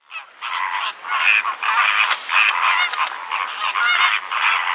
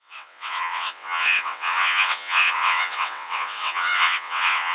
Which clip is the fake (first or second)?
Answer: second